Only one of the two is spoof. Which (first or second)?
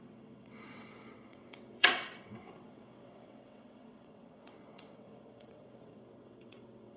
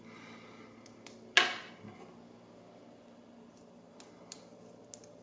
first